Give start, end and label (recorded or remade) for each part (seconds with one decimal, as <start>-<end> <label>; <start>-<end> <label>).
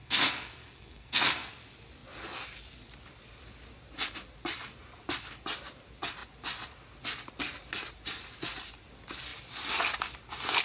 0.0-1.5 remade; 1.5-10.6 recorded